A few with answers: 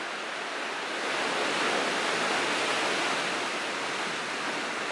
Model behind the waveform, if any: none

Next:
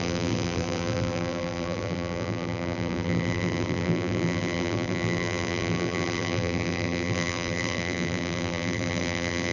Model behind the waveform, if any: vocoder, BigVGAN v2